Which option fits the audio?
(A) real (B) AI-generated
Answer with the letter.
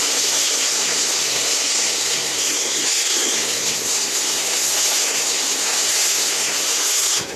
B